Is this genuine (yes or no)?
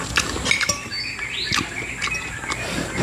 yes